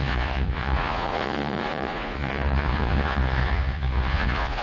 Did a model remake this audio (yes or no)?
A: yes